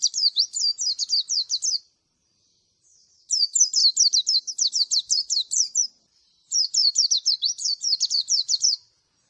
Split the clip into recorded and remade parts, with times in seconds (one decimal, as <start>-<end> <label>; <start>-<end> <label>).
0.0-0.7 remade; 0.7-1.8 recorded; 1.8-3.8 remade; 3.8-4.7 recorded; 4.7-9.3 remade